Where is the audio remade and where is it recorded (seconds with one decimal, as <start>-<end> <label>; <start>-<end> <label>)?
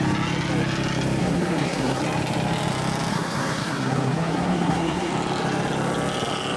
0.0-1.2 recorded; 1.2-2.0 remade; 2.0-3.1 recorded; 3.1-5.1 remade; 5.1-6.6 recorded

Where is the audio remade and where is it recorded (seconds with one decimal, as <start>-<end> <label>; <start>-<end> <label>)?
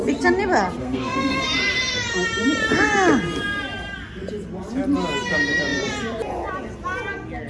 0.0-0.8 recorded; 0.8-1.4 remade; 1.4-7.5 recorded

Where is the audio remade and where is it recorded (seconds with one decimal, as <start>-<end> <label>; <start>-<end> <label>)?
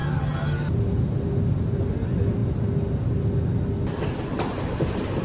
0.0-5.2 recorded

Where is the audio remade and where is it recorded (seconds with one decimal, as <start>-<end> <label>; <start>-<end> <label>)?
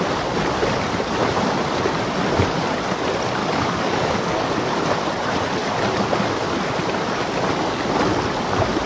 0.0-3.4 recorded; 3.4-4.5 remade; 4.5-8.9 recorded